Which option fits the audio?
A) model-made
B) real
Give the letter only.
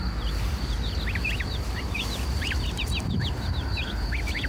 A